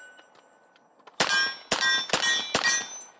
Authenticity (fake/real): real